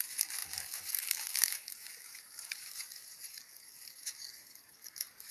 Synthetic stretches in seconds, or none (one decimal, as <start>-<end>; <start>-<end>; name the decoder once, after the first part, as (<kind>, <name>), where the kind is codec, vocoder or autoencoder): 0.0-5.3 (codec, DAC)